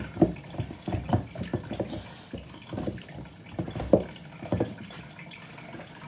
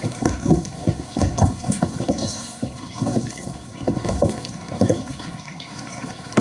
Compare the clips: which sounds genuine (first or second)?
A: first